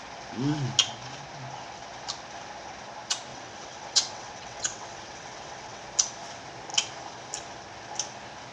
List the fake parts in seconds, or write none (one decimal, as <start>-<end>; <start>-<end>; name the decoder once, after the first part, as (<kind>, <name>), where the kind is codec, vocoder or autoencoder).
3.3-5.8 (vocoder, WaveNeXt)